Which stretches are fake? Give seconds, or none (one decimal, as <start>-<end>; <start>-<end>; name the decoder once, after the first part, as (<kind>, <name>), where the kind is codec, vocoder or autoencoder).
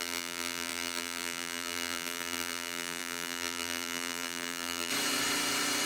0.0-4.9 (vocoder, BigVGAN v2)